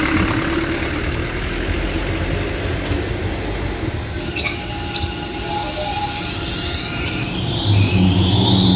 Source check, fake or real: real